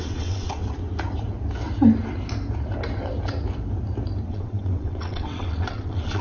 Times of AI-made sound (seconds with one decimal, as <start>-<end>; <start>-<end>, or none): 0.0-0.6; 4.3-6.2